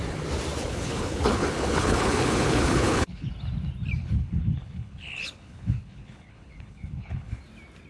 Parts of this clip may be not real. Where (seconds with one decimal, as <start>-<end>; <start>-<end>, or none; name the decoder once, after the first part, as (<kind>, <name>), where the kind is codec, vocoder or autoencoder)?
0.6-3.3 (codec, HILCodec); 4.0-7.4